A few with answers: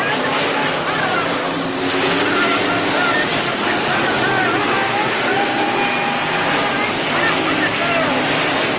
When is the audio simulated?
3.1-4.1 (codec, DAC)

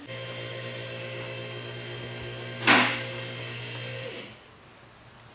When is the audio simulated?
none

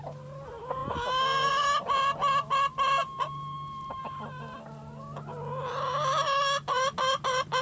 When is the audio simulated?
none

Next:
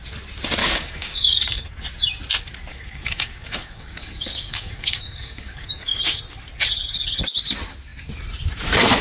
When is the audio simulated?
0.6-1.8 (codec, DAC); 2.7-6.2